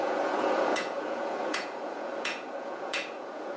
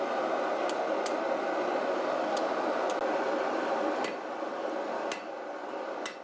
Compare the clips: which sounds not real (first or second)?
first